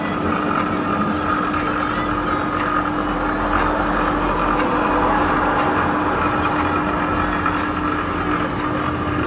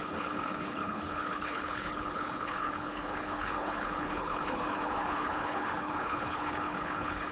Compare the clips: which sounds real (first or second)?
first